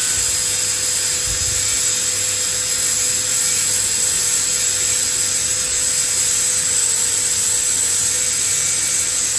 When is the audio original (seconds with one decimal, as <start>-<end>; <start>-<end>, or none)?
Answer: 0.0-9.4

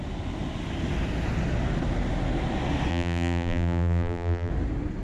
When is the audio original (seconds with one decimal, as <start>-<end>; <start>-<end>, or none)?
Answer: 0.0-2.9; 4.5-5.0